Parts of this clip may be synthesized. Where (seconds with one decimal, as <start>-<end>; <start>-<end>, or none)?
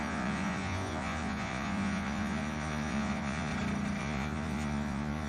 0.0-3.5; 4.0-5.3